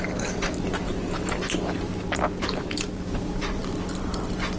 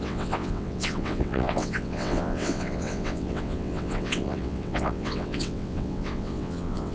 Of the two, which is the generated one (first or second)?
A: second